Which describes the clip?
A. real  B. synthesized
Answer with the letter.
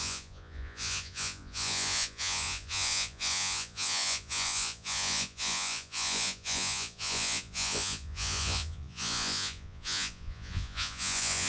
B